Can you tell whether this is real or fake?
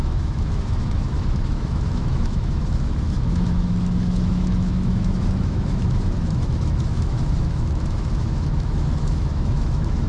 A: fake